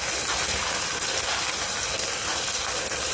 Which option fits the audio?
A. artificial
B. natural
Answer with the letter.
B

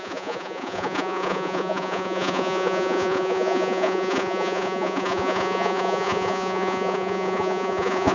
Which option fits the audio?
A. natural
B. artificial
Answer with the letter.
B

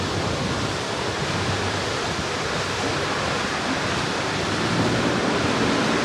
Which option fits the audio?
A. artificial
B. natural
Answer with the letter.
A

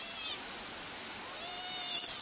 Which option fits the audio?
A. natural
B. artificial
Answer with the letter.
A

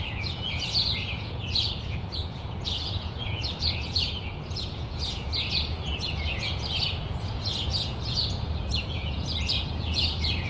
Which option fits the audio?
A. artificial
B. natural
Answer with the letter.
A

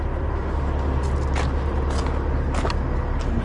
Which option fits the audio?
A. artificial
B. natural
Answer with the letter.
B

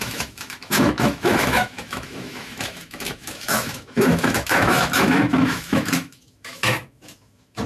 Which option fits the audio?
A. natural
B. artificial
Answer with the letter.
B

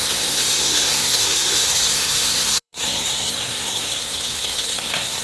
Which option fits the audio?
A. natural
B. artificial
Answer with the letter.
B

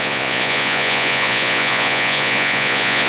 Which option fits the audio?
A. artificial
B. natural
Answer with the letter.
A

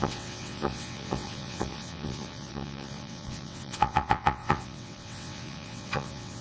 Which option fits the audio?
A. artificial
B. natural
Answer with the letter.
A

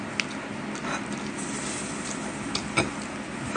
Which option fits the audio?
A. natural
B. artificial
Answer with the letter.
A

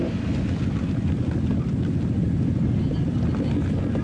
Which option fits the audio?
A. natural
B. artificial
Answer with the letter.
A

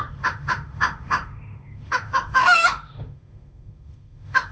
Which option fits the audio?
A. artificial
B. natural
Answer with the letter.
A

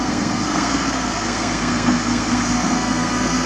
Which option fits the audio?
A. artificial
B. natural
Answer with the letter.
A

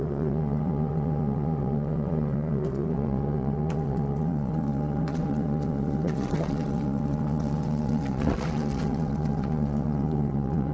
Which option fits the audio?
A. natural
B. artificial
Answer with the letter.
B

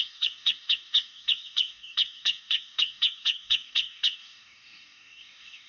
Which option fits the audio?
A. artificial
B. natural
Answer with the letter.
A